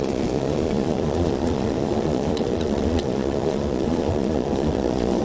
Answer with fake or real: fake